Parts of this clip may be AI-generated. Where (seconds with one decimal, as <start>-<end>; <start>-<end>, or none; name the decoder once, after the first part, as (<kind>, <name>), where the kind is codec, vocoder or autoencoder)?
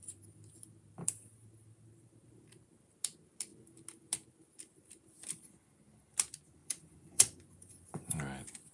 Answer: 6.6-8.2 (vocoder, Vocos)